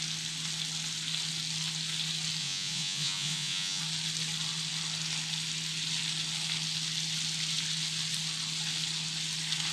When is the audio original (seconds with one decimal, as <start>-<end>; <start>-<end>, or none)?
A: 0.0-2.4; 3.8-9.7

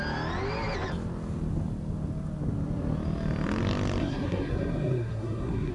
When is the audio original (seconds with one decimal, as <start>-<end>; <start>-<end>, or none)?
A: 0.0-4.0

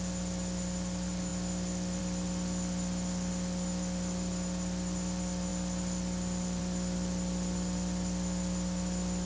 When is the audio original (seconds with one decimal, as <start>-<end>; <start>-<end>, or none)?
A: 0.0-9.3

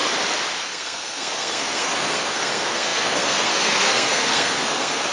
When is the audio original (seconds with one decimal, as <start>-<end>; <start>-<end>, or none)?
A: 0.0-0.6

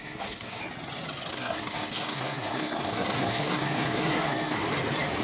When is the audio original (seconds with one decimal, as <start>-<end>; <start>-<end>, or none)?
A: 0.6-1.3; 4.6-5.2